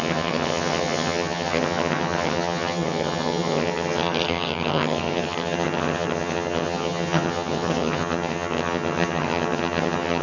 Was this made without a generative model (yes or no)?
no